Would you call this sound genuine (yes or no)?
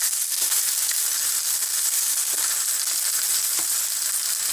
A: yes